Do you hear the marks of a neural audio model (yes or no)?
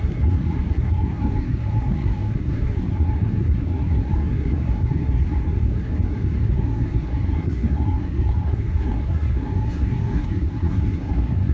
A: yes